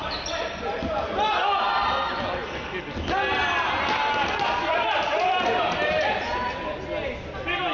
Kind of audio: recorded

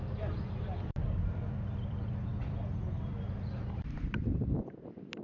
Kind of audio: remade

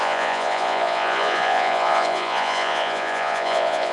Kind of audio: remade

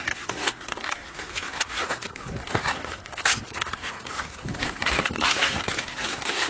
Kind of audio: remade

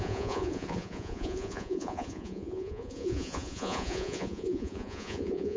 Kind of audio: remade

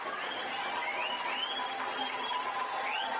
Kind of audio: recorded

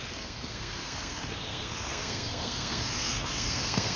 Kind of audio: remade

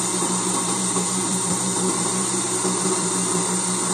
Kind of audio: remade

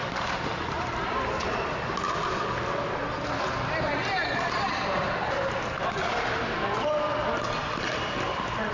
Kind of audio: recorded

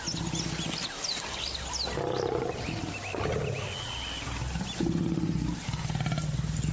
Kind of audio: recorded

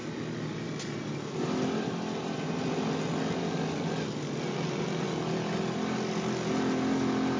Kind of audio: recorded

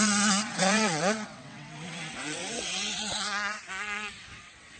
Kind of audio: remade